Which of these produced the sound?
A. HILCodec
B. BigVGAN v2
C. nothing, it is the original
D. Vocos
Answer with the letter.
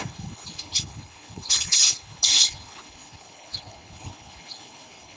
A